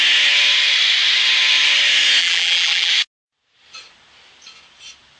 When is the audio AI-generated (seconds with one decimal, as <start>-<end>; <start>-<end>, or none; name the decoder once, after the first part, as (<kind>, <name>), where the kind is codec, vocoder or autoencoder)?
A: 2.2-2.9 (vocoder, BigVGAN v2)